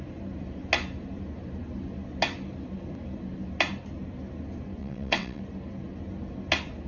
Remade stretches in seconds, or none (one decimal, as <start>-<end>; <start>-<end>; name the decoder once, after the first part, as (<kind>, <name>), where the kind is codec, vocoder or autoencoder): 4.8-5.4 (vocoder, WaveNeXt)